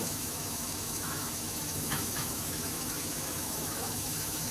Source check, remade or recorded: remade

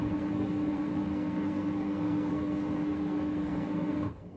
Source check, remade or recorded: remade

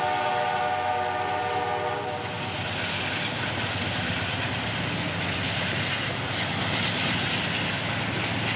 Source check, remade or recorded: recorded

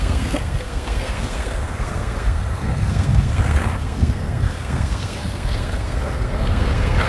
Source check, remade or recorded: remade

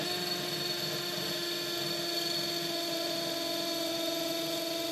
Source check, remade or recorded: recorded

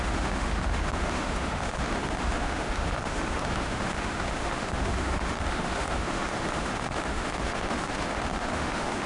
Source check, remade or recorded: remade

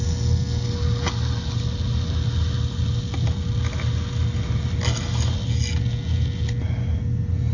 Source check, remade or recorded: recorded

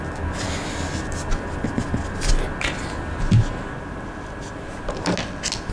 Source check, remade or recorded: recorded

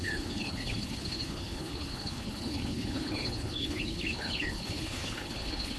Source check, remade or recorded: remade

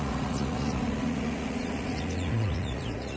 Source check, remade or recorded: remade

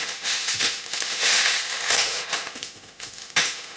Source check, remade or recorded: remade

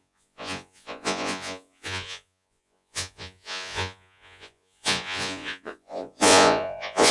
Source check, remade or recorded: remade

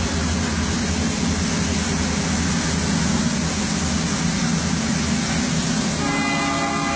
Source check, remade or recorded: recorded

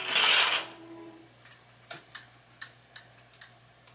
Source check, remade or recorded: recorded